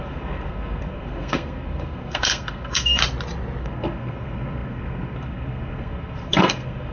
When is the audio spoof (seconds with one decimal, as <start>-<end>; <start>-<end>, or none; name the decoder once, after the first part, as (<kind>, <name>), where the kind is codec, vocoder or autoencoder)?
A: 0.0-3.0 (codec, SNAC); 3.6-6.9